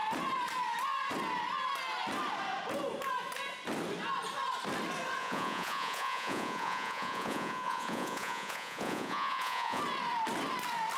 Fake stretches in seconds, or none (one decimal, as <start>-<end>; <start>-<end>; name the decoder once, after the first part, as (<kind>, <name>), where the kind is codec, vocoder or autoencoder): 5.2-9.8 (vocoder, Vocos)